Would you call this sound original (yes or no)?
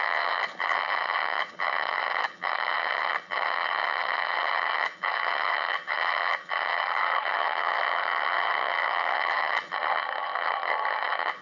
no